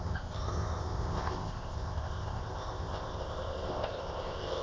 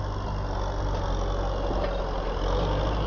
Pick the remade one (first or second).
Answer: first